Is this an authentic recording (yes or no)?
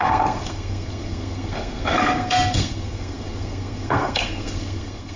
no